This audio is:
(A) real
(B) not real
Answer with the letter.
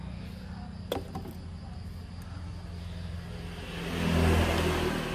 A